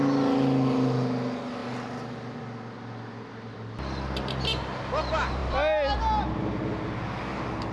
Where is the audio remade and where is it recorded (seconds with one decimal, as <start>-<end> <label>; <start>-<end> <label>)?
0.0-7.7 recorded